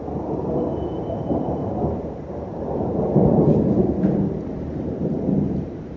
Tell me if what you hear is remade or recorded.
remade